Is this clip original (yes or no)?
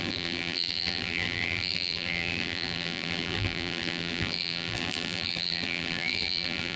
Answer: no